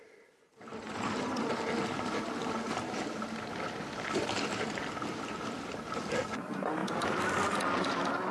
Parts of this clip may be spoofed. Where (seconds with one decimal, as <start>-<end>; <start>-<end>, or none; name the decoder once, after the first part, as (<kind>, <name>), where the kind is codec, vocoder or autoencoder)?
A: none